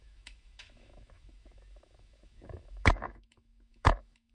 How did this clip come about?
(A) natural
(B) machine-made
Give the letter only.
B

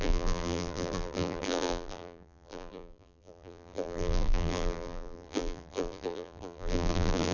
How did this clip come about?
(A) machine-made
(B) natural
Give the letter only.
A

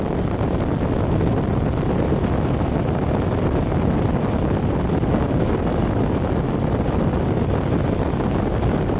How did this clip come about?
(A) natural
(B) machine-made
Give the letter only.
A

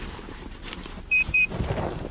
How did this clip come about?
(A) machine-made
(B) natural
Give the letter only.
A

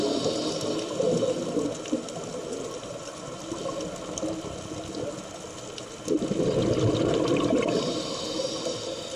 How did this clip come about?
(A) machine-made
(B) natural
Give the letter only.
B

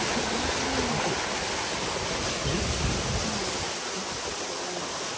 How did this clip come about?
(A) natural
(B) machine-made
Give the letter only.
A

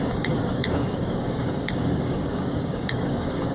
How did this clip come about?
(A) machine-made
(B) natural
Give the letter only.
A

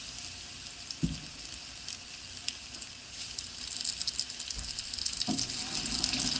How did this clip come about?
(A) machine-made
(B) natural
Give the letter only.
B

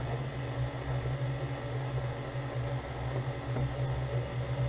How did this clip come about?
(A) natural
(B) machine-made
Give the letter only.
A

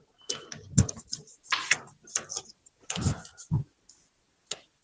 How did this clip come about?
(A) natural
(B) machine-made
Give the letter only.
A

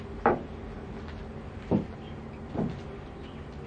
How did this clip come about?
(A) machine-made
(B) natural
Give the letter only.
B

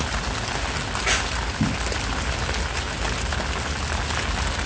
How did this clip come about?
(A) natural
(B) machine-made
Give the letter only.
A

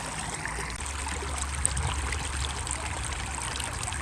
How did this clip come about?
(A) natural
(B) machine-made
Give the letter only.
A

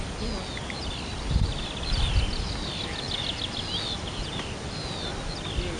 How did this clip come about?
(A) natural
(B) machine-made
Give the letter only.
A